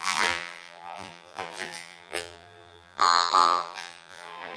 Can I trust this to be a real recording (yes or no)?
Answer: no